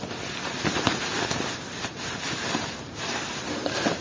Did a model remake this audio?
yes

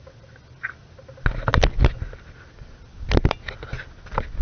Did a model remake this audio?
no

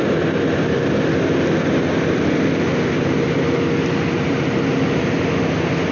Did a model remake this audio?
no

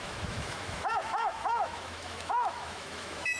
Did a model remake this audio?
yes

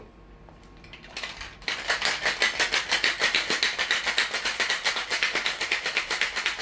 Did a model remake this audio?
no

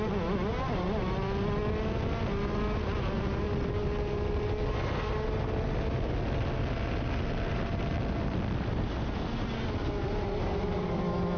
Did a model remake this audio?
no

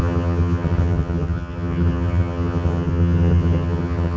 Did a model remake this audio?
yes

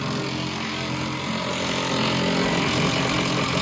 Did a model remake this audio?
no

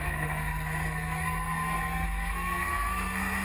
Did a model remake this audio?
yes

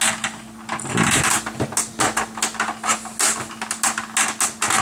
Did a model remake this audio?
no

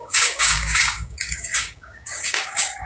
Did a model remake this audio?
yes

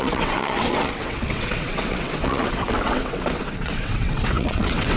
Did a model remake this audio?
yes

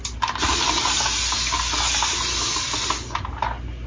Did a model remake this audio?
no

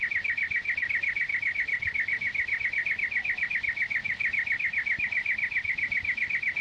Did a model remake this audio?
no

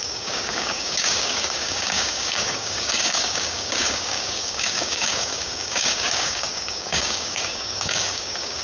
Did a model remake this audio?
yes